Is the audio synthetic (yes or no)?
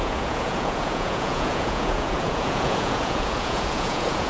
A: yes